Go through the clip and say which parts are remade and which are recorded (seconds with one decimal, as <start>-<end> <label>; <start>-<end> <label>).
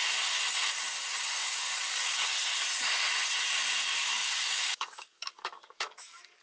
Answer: 0.0-1.4 recorded; 1.4-2.3 remade; 2.3-3.9 recorded; 3.9-6.4 remade